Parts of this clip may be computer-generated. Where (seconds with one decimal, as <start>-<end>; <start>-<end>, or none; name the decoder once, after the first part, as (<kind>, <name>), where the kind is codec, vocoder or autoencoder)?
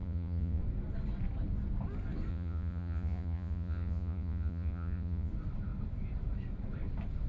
0.0-0.6 (vocoder, Vocos); 2.3-5.3